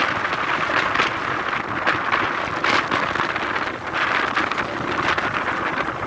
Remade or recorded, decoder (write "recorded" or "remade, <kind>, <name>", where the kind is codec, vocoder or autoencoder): recorded